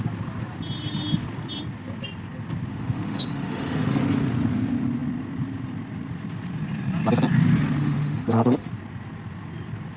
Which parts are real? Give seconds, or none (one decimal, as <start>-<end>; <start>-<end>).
0.0-2.7; 4.0-7.8; 8.7-10.0